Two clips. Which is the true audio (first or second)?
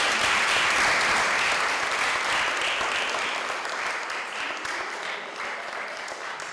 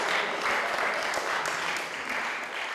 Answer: second